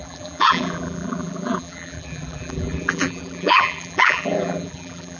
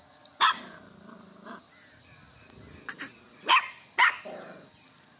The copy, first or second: first